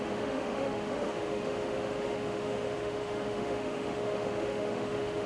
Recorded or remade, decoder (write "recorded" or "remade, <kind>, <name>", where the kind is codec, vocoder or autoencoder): remade, autoencoder, DAC-VAE